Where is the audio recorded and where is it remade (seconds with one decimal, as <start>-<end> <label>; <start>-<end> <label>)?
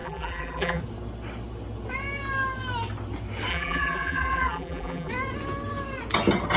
0.0-0.8 remade; 0.8-3.5 recorded; 3.5-5.1 remade; 5.1-6.6 recorded